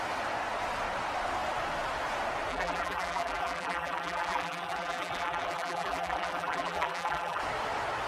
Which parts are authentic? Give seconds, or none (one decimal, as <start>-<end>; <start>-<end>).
0.0-2.5; 7.4-8.1